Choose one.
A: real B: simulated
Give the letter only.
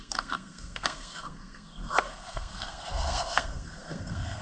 B